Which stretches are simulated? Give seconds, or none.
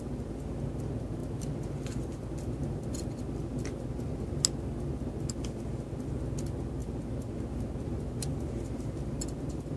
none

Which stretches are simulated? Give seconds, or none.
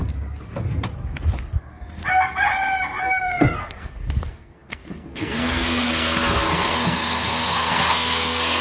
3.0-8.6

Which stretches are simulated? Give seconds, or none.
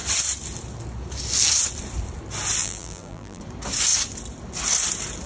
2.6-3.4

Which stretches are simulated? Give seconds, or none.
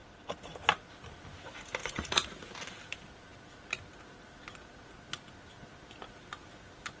1.8-2.5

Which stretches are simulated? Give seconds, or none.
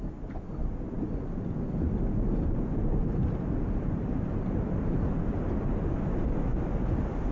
none